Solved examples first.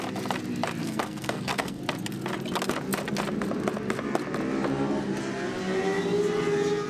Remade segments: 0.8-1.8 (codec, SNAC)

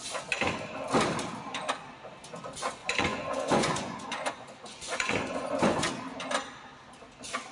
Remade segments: 2.8-5.9 (vocoder, Vocos)

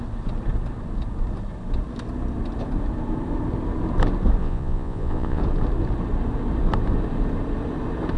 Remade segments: 4.4-5.4 (vocoder, Vocos)

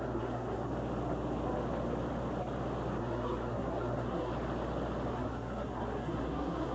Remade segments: 0.0-0.7 (codec, SNAC); 3.0-4.3; 5.1-6.7

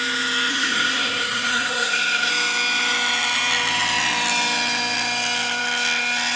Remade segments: 0.5-2.3 (codec, SNAC)

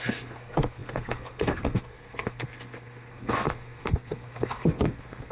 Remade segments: 0.0-5.3 (codec, SNAC)